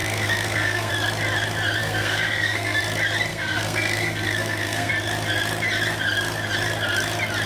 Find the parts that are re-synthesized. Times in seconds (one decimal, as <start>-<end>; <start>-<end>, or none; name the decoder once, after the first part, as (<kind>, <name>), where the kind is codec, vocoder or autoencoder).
0.0-0.9 (codec, SNAC); 1.8-2.8; 3.3-4.9